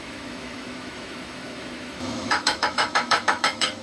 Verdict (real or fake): fake